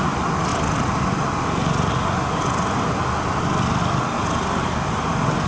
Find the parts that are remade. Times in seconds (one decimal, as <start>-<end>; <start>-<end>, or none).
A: none